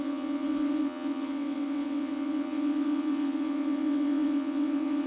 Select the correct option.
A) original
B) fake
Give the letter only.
B